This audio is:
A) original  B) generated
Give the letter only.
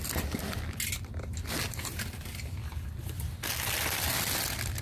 A